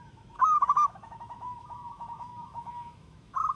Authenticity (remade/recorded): remade